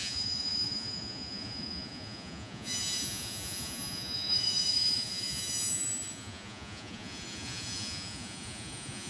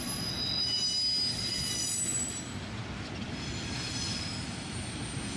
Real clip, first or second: second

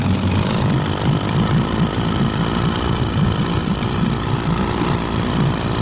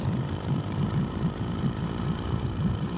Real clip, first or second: first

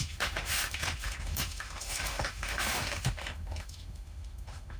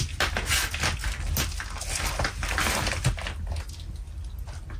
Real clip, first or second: second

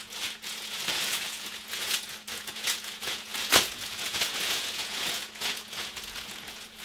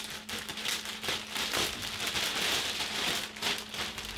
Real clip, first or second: second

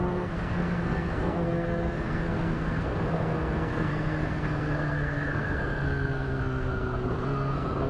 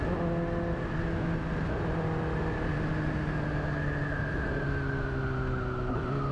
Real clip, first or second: second